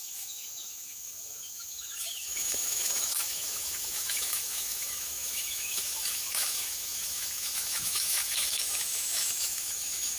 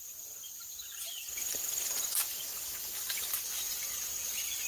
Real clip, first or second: second